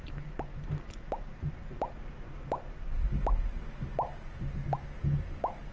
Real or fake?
real